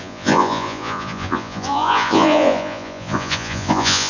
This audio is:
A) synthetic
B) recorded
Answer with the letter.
A